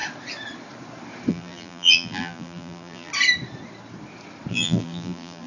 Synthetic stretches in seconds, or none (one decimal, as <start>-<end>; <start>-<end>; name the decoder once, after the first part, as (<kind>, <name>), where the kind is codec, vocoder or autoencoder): 1.3-3.1 (vocoder, BigVGAN v2); 4.5-5.5